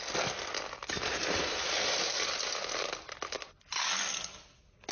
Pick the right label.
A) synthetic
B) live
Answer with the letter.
B